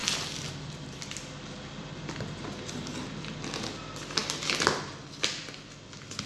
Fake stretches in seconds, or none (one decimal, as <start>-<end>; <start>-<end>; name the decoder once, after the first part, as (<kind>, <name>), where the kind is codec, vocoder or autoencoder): none